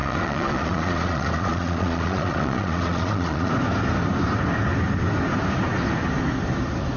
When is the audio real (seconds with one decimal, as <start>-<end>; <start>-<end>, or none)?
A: 3.5-7.0